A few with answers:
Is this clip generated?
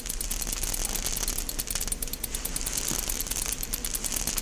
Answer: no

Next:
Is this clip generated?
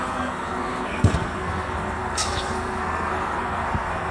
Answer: yes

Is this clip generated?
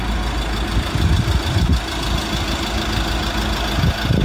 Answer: no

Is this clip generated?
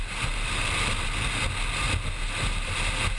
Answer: no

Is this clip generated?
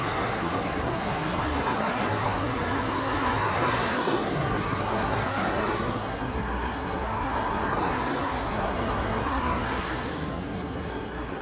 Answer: yes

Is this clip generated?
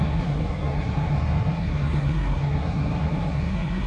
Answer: yes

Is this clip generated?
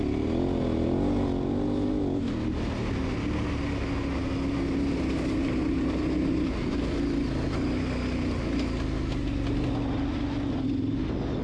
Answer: no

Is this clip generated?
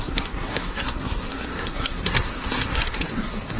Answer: yes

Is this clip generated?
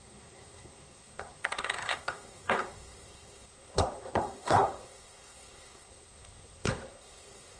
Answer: yes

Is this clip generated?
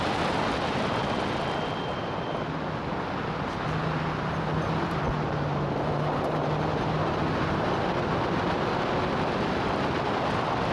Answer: no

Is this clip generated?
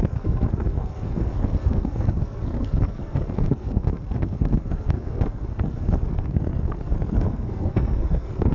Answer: yes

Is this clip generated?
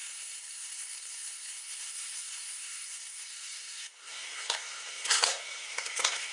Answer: yes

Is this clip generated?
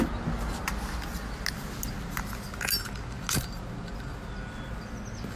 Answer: no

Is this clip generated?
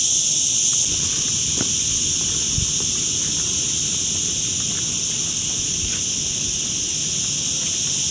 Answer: no